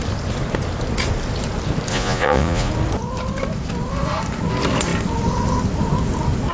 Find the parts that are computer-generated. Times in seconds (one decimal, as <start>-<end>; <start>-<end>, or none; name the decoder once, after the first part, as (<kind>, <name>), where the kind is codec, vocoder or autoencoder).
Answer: 1.9-2.7 (vocoder, Vocos)